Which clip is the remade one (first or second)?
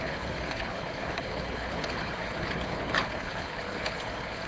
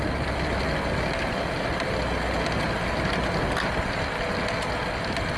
first